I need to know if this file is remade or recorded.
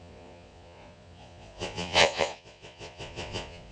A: remade